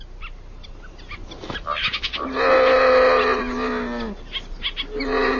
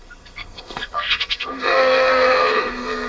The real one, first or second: first